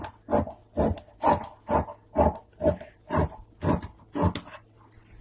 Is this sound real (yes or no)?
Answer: yes